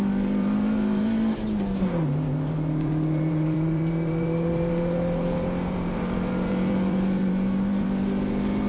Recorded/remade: remade